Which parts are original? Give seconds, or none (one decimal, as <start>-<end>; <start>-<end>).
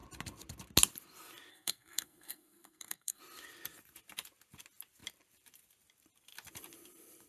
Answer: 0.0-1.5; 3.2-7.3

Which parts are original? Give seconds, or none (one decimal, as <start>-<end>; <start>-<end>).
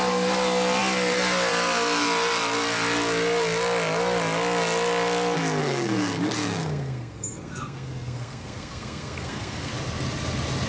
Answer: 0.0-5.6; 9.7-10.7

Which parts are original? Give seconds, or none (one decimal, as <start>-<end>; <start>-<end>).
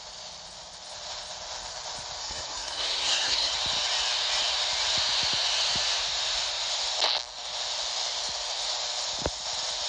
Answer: 0.0-2.2; 3.5-9.9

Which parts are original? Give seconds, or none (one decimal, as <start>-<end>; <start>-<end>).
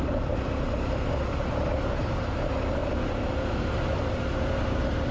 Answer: 0.0-5.1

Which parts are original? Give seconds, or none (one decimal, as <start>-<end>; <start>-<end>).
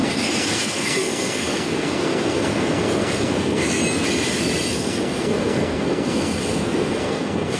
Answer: 3.8-4.7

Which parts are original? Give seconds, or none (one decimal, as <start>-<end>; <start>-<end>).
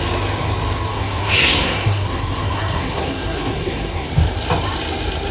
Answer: 0.0-0.9; 4.1-5.3